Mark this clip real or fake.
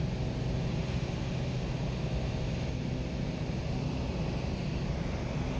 real